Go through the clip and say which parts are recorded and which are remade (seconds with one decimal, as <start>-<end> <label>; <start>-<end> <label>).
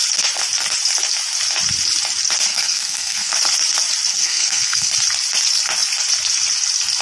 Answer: 0.0-2.5 recorded; 2.5-3.3 remade; 3.3-4.1 recorded; 4.1-4.9 remade; 4.9-7.0 recorded